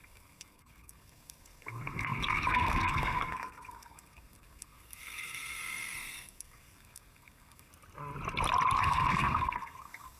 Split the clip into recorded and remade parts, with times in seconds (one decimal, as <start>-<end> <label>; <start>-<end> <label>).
0.0-7.7 remade; 7.7-8.8 recorded; 8.8-10.2 remade